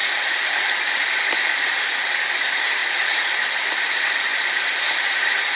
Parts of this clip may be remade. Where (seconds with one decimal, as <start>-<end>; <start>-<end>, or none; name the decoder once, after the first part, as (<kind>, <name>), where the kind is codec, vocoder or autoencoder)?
none